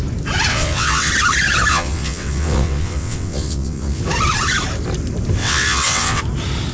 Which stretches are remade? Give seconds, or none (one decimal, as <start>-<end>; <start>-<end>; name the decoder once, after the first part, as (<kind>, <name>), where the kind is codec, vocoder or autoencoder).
0.5-1.1 (vocoder, WaveNeXt); 1.7-4.0; 5.4-6.2